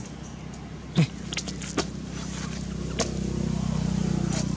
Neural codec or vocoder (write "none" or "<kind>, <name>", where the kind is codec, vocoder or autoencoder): none